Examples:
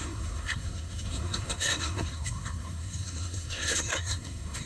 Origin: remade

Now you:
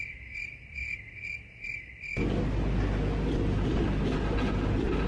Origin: recorded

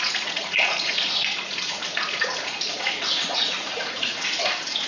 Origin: remade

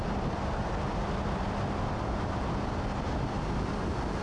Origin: recorded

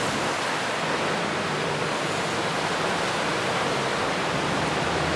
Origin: recorded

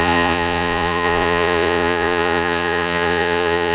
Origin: remade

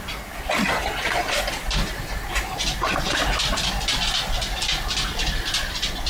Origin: recorded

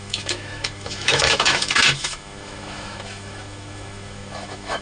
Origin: remade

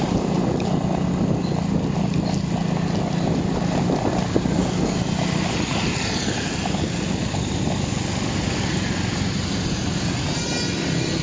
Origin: recorded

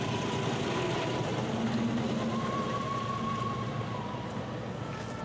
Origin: recorded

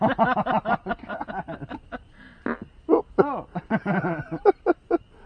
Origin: recorded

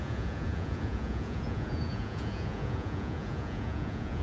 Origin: remade